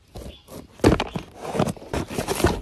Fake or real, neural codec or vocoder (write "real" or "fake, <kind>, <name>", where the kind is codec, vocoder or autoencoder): real